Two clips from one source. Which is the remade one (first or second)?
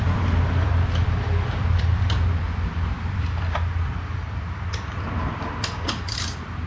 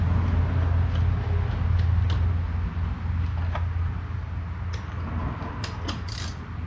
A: first